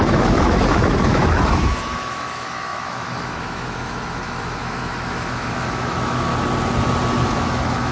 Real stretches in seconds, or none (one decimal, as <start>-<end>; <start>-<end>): 6.3-7.3